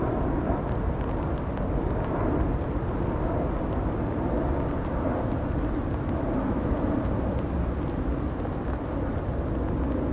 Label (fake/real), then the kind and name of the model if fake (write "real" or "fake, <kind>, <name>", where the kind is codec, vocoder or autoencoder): real